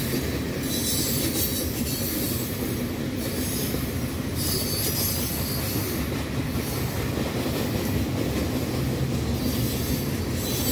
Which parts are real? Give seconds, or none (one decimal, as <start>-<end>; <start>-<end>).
0.0-10.7

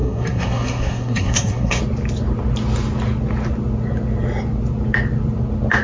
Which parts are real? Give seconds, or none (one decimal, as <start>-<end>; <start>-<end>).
1.8-5.8